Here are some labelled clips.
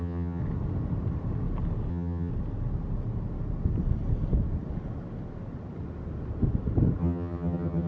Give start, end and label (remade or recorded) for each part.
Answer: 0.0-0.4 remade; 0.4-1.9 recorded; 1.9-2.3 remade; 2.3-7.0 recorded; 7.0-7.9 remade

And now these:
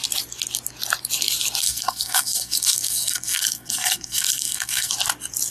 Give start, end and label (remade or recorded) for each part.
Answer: 0.0-1.6 recorded; 1.6-4.9 remade; 4.9-5.5 recorded

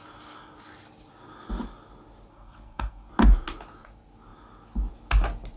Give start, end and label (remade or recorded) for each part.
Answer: 0.0-2.3 recorded; 2.3-3.1 remade; 3.1-5.6 recorded